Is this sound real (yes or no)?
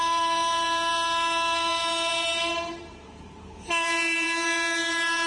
no